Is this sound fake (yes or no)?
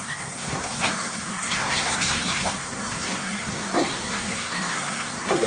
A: yes